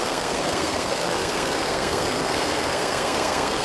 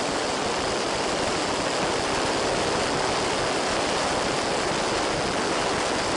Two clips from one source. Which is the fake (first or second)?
first